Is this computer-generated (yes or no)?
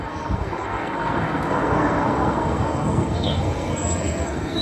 yes